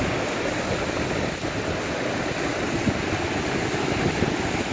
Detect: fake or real real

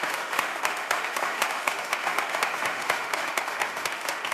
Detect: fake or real fake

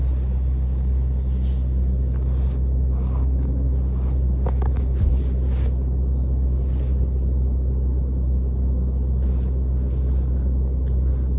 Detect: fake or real real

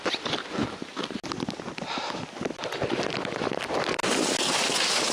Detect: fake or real real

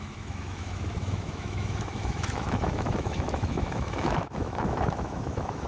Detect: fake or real fake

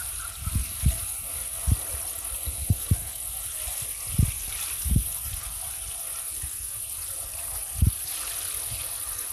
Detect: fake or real real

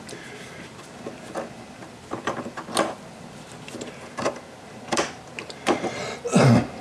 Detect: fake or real real